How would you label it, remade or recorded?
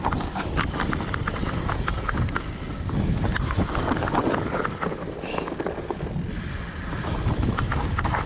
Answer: recorded